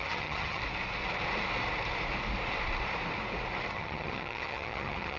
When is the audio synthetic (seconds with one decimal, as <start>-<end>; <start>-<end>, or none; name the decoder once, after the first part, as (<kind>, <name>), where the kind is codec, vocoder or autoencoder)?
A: 0.0-0.6 (vocoder, HiFi-GAN); 3.7-5.2